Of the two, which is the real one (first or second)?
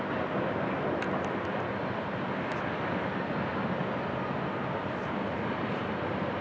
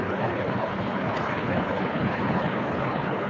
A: first